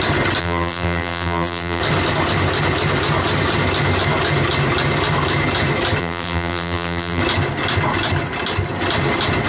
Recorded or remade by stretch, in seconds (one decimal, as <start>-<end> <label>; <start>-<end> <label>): 0.0-0.4 recorded; 0.4-1.8 remade; 1.8-6.0 recorded; 6.0-7.2 remade; 7.2-9.5 recorded